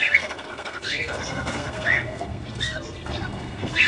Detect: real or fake fake